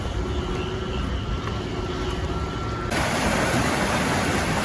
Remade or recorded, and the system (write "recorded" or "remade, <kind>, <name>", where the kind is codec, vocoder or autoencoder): recorded